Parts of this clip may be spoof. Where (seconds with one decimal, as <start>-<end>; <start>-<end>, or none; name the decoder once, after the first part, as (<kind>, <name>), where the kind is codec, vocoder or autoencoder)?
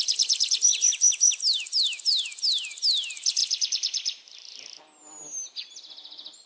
none